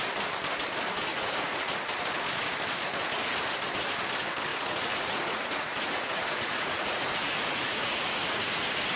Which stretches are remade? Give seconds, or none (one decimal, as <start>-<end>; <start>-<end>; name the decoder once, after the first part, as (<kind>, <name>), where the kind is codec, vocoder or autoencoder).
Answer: 1.1-1.9 (vocoder, Vocos); 4.5-8.5